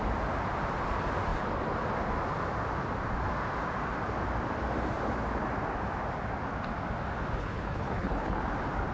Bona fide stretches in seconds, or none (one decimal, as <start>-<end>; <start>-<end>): 0.0-7.4; 8.4-8.9